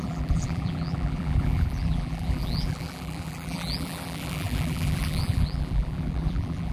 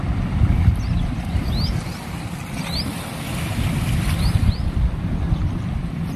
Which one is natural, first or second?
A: second